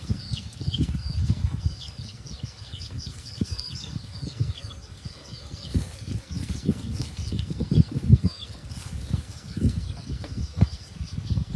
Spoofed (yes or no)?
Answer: yes